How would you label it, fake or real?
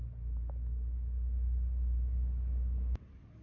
real